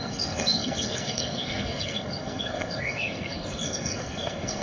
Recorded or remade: remade